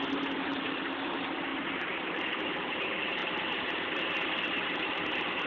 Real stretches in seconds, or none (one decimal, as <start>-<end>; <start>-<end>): 0.0-1.5; 2.3-3.2

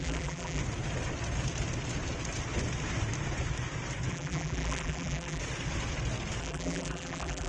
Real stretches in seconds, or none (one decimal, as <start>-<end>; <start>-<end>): 0.6-4.1; 5.4-6.4

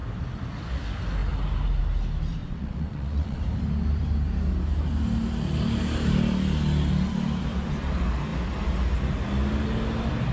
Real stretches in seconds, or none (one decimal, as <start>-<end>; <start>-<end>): 0.0-2.4; 3.4-10.3